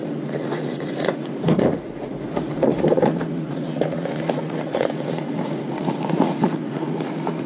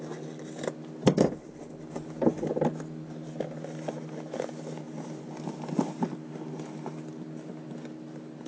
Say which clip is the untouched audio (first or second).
second